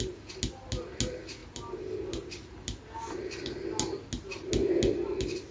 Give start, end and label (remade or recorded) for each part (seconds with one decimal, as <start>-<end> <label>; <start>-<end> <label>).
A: 0.0-5.5 recorded